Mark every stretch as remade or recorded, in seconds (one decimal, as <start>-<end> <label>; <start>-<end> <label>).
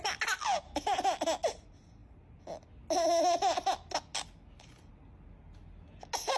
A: 0.0-6.4 recorded